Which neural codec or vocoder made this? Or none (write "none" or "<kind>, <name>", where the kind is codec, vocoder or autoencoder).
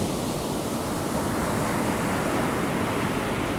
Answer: none